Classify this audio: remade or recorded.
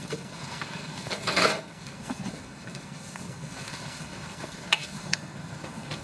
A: remade